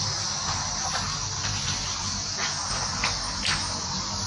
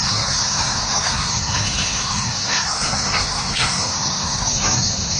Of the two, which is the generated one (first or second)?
second